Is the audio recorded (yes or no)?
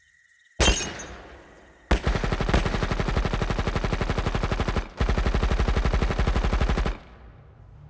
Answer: yes